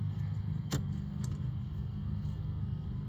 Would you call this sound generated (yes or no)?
yes